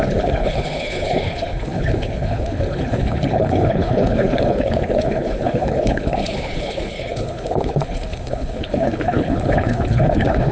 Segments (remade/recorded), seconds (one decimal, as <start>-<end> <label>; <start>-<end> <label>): 0.0-10.5 remade

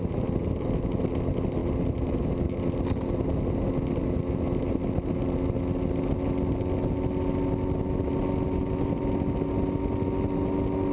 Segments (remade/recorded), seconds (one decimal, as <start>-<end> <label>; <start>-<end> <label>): 0.0-10.9 recorded

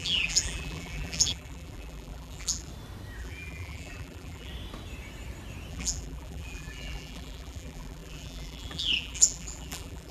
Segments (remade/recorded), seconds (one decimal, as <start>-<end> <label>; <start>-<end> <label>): 0.0-2.7 remade; 2.7-3.2 recorded; 3.2-4.5 remade; 4.5-5.7 recorded; 5.7-10.1 remade

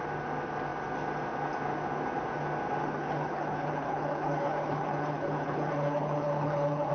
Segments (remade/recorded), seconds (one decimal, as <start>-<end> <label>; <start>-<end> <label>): 0.0-2.8 recorded; 2.8-6.9 remade